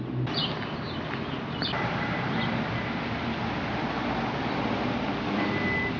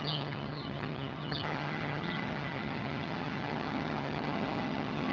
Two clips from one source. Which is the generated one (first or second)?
second